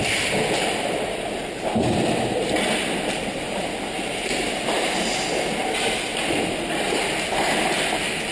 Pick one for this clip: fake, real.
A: real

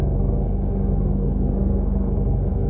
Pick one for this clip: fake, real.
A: fake